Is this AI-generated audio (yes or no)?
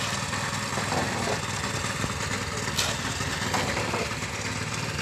no